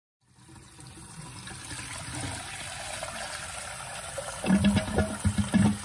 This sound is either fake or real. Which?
real